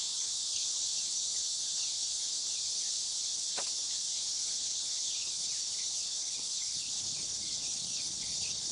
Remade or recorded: remade